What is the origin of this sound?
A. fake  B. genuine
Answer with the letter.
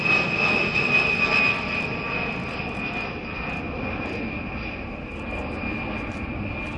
B